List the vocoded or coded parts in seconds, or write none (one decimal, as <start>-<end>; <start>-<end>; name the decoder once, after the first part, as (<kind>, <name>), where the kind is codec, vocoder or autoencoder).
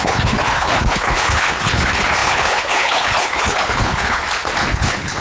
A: 0.0-4.2 (codec, HILCodec); 4.7-5.2